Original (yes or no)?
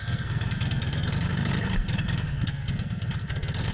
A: no